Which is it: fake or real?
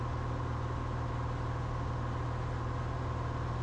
real